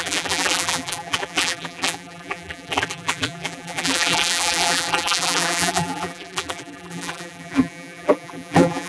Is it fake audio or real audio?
fake